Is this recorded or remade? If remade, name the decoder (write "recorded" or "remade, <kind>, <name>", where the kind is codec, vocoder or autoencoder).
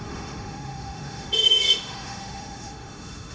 remade, autoencoder, DAC-VAE